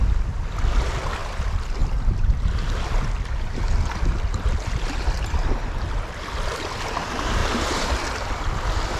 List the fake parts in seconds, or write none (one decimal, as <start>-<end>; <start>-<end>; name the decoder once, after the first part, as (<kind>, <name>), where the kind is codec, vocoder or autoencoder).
7.4-7.9 (vocoder, BigVGAN v2)